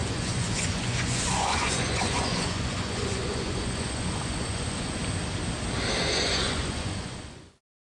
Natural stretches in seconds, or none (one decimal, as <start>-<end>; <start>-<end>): 5.0-6.0